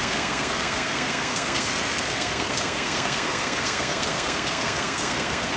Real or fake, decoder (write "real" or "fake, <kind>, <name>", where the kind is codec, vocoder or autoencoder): fake, codec, SNAC